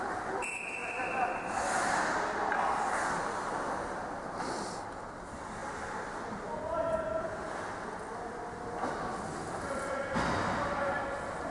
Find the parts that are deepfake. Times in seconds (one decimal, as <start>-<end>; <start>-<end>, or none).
none